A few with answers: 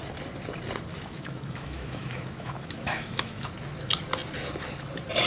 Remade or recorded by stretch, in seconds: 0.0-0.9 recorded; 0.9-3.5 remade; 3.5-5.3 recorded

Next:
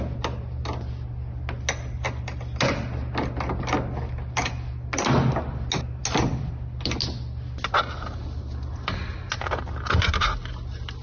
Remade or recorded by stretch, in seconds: 0.0-11.0 recorded

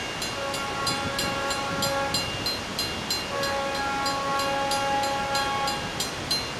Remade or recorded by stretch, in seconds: 0.0-1.2 recorded; 1.2-1.7 remade; 1.7-6.6 recorded

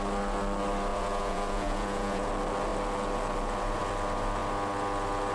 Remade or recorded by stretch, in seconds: 0.0-0.9 recorded; 0.9-2.3 remade; 2.3-5.3 recorded

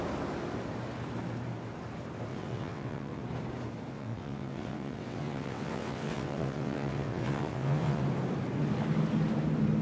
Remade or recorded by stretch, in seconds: 0.0-2.3 recorded; 2.3-3.2 remade; 3.2-3.9 recorded; 3.9-8.0 remade; 8.0-9.8 recorded